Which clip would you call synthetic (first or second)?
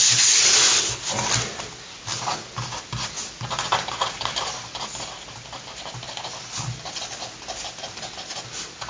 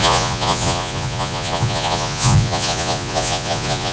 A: second